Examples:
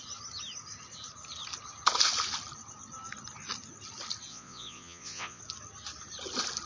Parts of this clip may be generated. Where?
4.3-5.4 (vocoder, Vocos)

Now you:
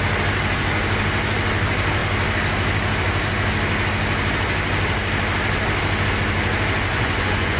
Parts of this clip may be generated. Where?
6.9-7.6 (vocoder, Vocos)